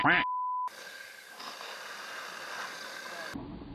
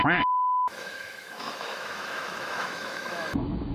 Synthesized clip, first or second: second